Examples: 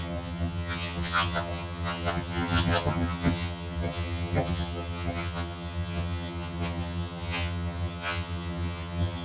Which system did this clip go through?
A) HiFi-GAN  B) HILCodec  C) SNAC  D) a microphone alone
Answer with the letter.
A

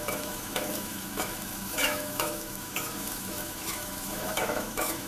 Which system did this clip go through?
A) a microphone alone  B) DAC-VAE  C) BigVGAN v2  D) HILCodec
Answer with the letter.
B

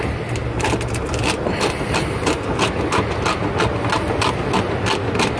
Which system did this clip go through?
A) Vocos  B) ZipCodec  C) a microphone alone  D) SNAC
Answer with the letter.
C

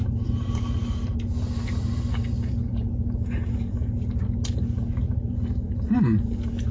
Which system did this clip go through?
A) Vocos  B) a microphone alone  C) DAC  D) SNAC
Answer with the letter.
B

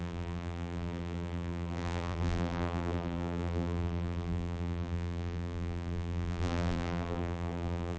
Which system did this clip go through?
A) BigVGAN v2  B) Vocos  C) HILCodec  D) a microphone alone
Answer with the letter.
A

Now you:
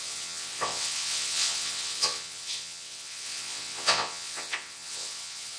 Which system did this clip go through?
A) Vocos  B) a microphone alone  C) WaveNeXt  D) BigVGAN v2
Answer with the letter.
C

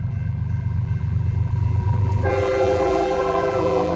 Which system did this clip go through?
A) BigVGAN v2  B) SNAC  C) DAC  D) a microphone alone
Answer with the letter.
A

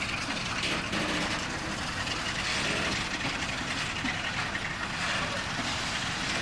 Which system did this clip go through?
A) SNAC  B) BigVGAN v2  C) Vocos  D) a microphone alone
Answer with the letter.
D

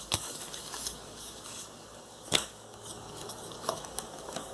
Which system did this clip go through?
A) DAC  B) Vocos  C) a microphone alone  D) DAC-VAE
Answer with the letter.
A